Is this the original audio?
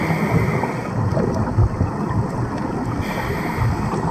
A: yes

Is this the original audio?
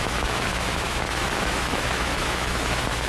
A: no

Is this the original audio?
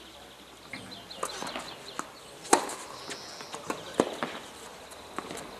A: yes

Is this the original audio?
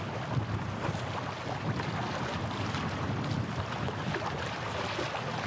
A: yes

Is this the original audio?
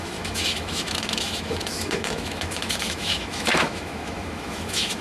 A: no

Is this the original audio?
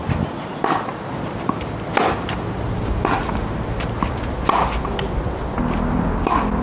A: yes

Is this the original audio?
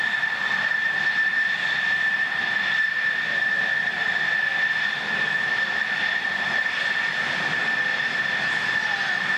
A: yes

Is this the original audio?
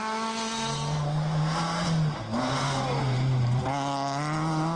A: yes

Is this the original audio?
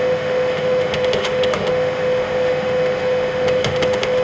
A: no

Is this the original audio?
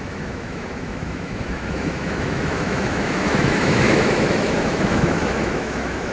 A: no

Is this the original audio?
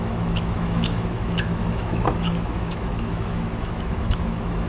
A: no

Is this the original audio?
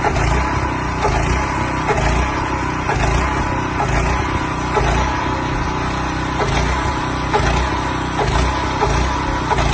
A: yes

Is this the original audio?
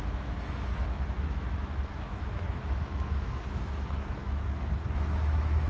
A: no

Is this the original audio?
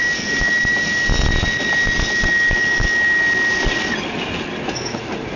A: yes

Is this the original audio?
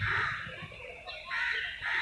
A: yes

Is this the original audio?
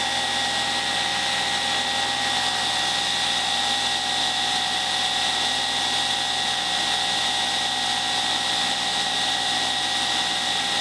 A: yes